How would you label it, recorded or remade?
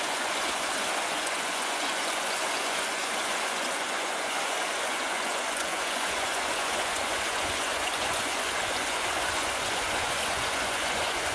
remade